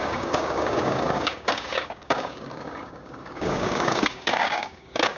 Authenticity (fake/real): fake